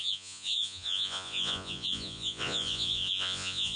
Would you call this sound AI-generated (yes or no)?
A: yes